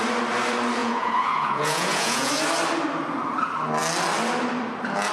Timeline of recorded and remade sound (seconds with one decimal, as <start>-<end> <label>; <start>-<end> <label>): 0.0-0.8 recorded; 0.8-2.3 remade; 2.3-5.1 recorded